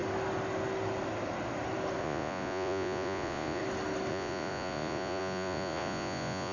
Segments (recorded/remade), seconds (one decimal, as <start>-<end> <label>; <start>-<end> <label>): 0.0-2.0 recorded; 2.0-3.6 remade; 3.6-4.1 recorded; 4.1-6.5 remade